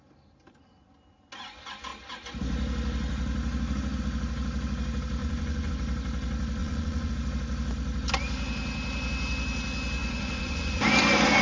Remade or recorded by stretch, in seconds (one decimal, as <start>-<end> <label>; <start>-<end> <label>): 0.0-5.2 recorded; 5.2-5.7 remade; 5.7-6.6 recorded; 6.6-7.1 remade; 7.1-10.0 recorded; 10.0-10.8 remade; 10.8-11.4 recorded